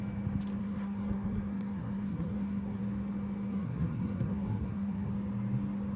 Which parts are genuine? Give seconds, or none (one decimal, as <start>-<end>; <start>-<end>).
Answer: 0.0-0.6; 2.8-3.5; 5.1-6.0

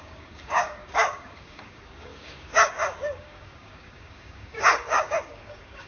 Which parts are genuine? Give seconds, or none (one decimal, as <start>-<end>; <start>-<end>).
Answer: none

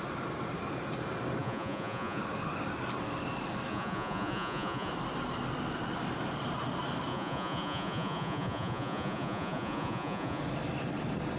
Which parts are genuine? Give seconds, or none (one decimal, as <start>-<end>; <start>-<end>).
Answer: 0.0-1.4; 2.2-3.7; 4.9-7.1; 10.4-11.4

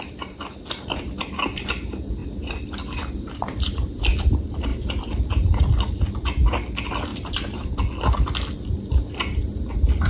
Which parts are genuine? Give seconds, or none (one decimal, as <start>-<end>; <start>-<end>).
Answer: 0.0-2.2; 4.0-4.7; 5.6-7.1; 7.7-10.1

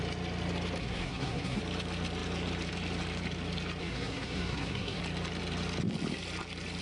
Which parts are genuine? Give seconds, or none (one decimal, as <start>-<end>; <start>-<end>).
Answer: 0.0-0.8; 1.6-3.8; 5.0-6.8